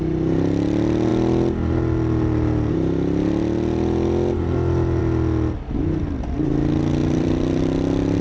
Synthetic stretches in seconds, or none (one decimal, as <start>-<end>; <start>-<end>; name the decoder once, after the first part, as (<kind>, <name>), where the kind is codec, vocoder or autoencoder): 7.0-7.6 (vocoder, BigVGAN v2)